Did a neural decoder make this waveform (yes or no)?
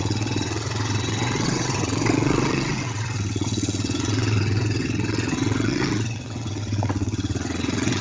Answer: yes